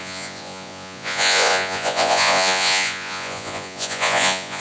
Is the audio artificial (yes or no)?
yes